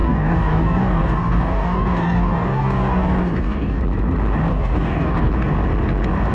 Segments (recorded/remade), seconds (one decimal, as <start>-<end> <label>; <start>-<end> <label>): 0.0-3.8 remade; 3.8-4.5 recorded; 4.5-5.3 remade; 5.3-6.3 recorded